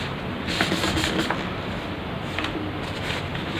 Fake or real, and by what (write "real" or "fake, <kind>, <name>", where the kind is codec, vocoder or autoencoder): real